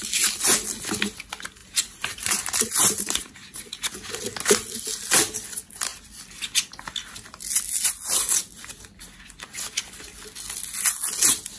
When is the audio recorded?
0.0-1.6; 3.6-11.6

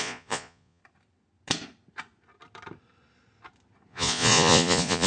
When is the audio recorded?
0.8-3.9

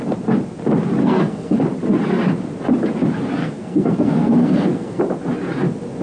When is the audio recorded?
0.0-1.0; 1.6-3.4; 5.0-6.0

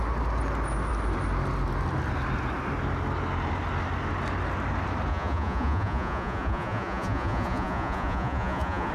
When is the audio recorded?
0.0-5.1